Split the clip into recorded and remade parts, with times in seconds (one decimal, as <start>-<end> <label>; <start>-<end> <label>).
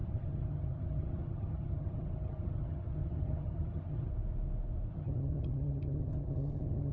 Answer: 0.0-4.1 remade; 4.1-4.9 recorded; 4.9-6.9 remade